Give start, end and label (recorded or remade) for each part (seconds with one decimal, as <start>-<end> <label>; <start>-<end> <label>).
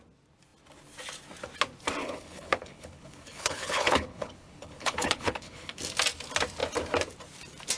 0.0-2.0 recorded; 2.0-5.8 remade; 5.8-7.8 recorded